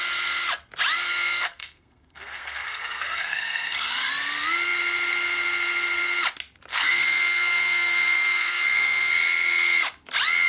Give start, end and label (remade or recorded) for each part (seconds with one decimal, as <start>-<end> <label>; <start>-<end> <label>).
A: 0.0-1.1 recorded; 1.1-4.1 remade; 4.1-6.7 recorded; 6.7-9.1 remade; 9.1-10.5 recorded